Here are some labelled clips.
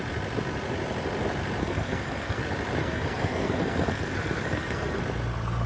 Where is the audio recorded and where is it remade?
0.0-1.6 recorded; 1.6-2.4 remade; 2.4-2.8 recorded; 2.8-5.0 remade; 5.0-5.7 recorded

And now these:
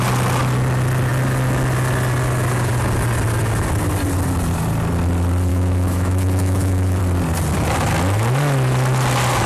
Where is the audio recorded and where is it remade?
0.0-5.5 recorded; 5.5-7.0 remade; 7.0-9.5 recorded